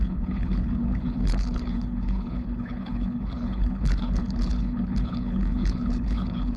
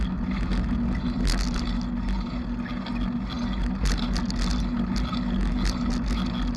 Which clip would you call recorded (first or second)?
second